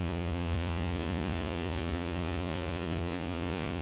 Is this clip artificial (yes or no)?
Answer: yes